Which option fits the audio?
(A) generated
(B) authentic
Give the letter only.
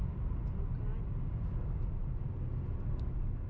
B